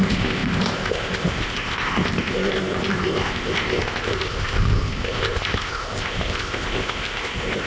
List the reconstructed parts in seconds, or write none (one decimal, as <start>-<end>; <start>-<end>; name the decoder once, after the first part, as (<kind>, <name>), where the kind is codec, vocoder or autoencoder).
0.0-7.7 (codec, ZipCodec)